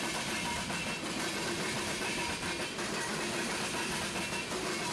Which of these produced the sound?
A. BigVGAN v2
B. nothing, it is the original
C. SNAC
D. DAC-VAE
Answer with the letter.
B